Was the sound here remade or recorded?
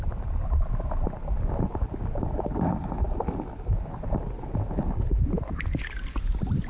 recorded